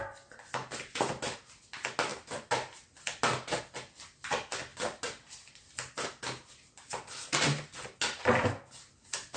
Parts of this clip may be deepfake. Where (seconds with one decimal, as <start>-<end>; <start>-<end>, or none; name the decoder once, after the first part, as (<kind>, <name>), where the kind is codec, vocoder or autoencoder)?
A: none